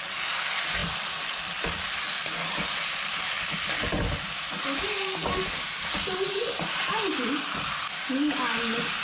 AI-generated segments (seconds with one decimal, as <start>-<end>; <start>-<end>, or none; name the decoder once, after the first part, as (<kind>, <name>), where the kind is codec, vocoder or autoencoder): none